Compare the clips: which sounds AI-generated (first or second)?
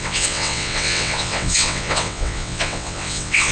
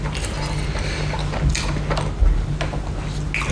first